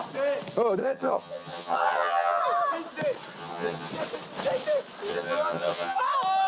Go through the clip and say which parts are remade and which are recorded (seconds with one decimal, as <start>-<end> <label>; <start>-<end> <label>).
0.0-0.8 recorded; 0.8-2.4 remade; 2.4-3.4 recorded; 3.4-3.9 remade; 3.9-5.1 recorded; 5.1-6.0 remade; 6.0-6.5 recorded

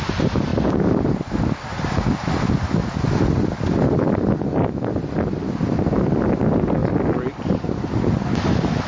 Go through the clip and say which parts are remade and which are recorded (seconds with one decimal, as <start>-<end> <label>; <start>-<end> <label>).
0.0-8.9 recorded